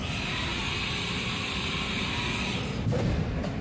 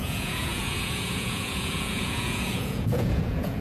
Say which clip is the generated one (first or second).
second